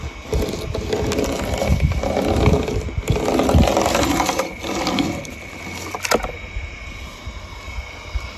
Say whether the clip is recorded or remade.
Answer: recorded